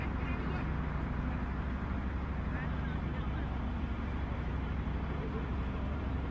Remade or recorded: remade